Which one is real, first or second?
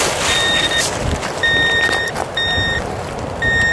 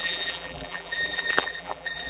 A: first